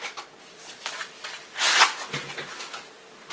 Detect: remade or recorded recorded